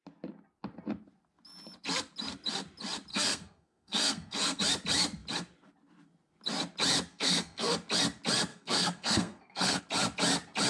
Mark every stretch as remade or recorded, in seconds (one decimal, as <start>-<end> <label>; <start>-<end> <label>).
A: 0.0-3.1 recorded; 3.1-4.6 remade; 4.6-7.1 recorded; 7.1-7.7 remade; 7.7-8.5 recorded; 8.5-9.8 remade; 9.8-10.7 recorded